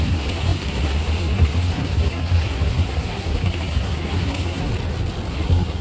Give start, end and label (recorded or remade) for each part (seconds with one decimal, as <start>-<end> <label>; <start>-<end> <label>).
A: 0.0-4.7 remade; 4.7-5.3 recorded; 5.3-5.8 remade